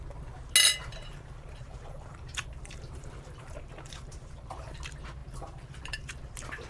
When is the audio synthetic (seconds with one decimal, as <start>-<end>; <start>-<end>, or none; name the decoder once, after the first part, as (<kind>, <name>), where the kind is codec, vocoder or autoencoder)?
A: 0.8-4.8 (vocoder, BigVGAN v2); 5.2-6.2